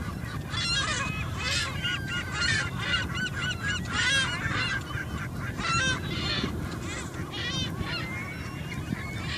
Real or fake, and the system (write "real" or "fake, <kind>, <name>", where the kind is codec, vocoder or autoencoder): real